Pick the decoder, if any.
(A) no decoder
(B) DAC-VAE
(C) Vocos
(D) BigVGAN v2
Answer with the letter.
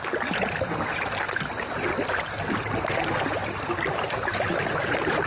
A